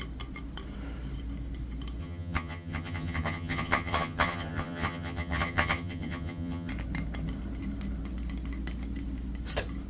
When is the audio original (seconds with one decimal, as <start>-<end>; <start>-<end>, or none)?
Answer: 0.0-2.0; 6.7-9.9